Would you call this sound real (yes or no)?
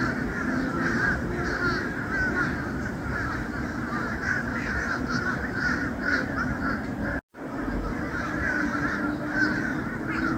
yes